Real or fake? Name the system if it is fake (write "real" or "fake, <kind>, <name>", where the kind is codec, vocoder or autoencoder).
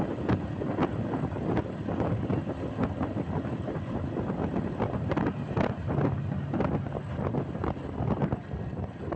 real